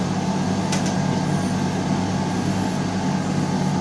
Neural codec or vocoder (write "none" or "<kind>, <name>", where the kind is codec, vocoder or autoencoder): none